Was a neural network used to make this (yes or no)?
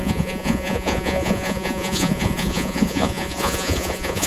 yes